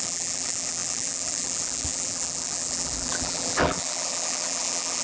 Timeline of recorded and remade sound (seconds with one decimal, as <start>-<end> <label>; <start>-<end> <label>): 0.0-5.0 remade